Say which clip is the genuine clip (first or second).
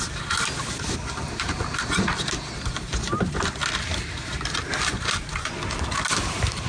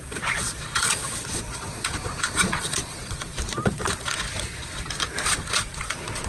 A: first